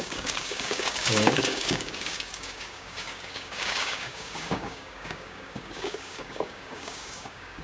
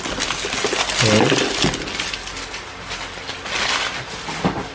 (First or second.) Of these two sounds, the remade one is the first